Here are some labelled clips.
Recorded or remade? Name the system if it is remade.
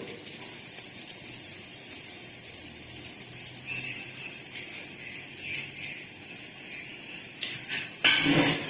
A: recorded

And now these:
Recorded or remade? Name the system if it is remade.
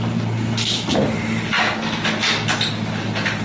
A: recorded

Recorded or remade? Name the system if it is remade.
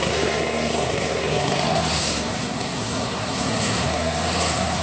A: remade, codec, SNAC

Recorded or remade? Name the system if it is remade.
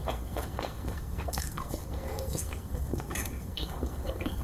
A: remade, codec, SNAC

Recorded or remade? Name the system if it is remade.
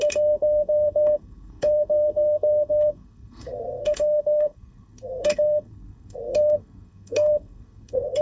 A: remade, codec, SNAC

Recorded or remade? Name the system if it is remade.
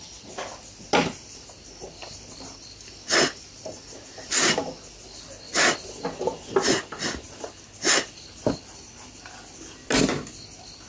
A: recorded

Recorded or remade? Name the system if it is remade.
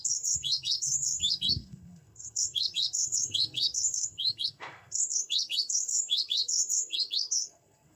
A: remade, codec, SNAC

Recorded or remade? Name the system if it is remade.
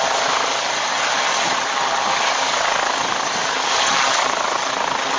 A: recorded